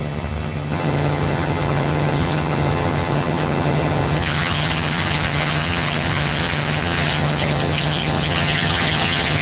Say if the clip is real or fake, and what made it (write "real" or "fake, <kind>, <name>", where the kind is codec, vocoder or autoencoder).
fake, vocoder, HiFi-GAN